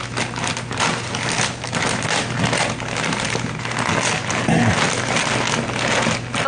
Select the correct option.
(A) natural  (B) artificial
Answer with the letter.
A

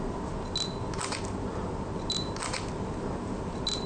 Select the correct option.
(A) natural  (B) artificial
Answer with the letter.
A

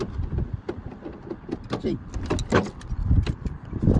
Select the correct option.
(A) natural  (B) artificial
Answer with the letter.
A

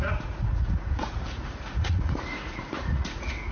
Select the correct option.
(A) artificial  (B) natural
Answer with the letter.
A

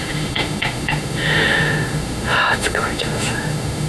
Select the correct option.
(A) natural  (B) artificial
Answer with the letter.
B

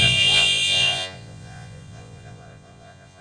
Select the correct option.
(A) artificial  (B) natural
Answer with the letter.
A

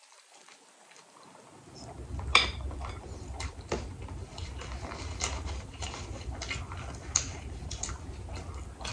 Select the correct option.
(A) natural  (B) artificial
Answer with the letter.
A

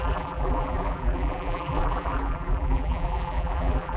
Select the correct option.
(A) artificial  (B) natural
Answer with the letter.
A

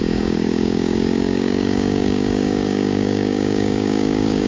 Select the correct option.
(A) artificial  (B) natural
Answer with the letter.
A